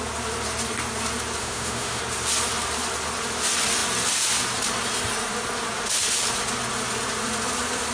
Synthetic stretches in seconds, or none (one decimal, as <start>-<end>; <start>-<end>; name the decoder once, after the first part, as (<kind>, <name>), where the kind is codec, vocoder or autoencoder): 1.4-2.0 (autoencoder, DAC-VAE)